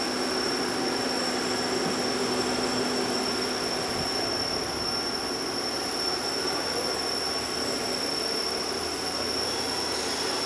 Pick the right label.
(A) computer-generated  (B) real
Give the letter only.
B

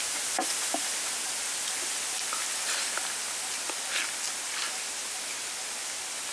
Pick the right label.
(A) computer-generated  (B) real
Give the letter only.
B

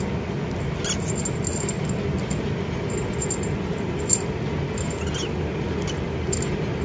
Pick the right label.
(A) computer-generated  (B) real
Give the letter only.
B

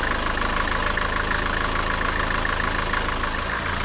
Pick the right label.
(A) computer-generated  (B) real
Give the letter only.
B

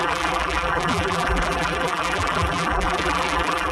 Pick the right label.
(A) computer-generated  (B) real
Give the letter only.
A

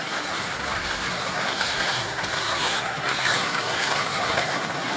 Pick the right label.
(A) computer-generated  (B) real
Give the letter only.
A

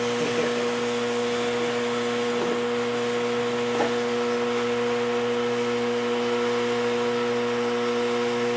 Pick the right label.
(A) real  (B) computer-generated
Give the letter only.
A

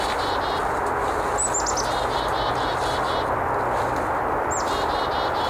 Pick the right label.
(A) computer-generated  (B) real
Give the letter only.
B